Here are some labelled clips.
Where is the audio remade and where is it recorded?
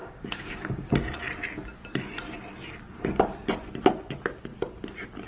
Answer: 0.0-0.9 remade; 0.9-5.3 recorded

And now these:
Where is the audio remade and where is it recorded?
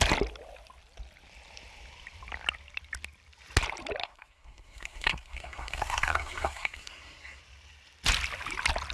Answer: 0.0-4.0 recorded; 4.0-7.4 remade; 7.4-8.9 recorded